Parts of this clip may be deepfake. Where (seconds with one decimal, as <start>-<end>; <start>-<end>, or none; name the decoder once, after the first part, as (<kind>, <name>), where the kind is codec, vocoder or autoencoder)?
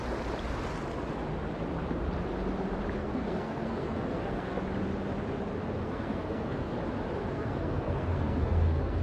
3.0-4.6 (codec, SNAC); 5.8-6.7; 7.2-9.0